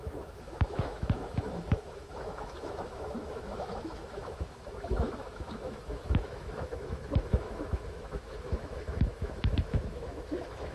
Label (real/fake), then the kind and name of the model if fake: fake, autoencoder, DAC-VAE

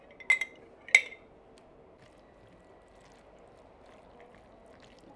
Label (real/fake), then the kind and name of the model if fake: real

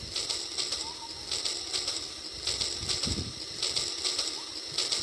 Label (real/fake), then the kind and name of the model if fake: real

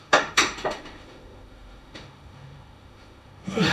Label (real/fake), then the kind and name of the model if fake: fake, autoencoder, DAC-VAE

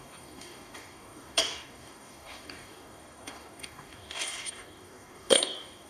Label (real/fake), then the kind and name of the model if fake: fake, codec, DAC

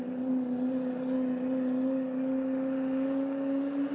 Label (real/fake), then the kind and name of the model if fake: real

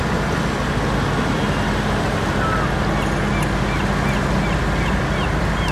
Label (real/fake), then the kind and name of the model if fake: real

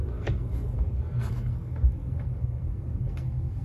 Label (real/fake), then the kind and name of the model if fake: fake, codec, SNAC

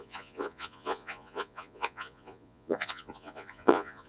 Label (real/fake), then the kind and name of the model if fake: fake, vocoder, Vocos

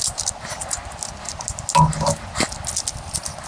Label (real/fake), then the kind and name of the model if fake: real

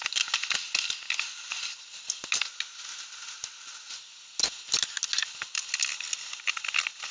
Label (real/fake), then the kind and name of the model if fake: real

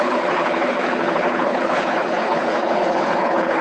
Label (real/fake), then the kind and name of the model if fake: fake, codec, HILCodec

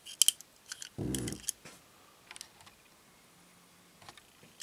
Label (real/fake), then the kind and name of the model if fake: real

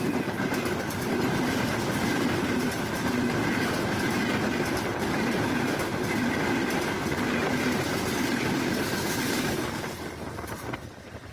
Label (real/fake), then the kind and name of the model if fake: fake, vocoder, BigVGAN v2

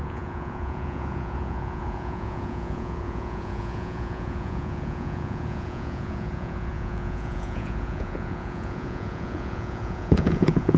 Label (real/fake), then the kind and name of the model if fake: fake, vocoder, Vocos